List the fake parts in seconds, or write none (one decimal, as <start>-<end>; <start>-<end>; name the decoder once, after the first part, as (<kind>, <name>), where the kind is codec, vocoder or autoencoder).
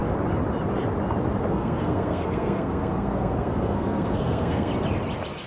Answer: 1.5-4.7 (codec, SNAC)